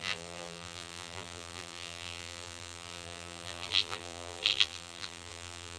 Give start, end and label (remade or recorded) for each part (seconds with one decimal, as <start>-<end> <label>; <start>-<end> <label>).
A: 0.0-5.8 remade